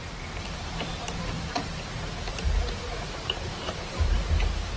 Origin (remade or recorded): remade